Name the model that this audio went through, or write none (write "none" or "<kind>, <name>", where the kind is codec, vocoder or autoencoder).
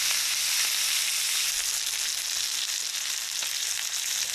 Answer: none